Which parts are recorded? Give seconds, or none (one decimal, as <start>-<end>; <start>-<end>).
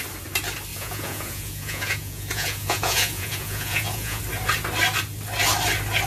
0.0-0.7; 4.2-6.1